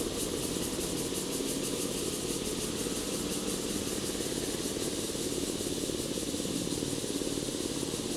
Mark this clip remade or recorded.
recorded